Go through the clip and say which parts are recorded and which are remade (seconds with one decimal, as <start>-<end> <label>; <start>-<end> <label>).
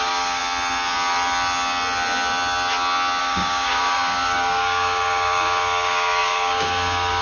0.0-0.4 remade; 0.4-3.2 recorded; 3.2-7.2 remade